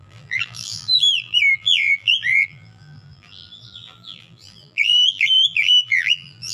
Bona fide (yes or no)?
no